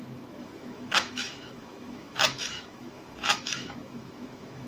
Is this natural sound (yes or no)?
no